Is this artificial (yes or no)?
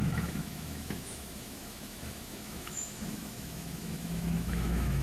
yes